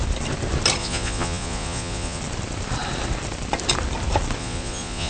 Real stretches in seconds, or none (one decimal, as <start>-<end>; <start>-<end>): 0.0-0.8; 2.2-4.4